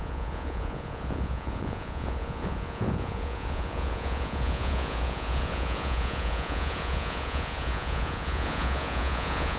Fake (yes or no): yes